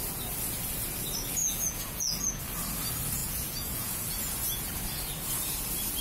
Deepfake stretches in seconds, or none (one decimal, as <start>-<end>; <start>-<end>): 1.4-2.4; 3.2-4.7